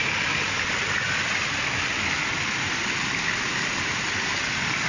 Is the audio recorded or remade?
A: recorded